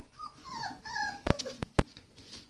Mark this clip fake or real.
fake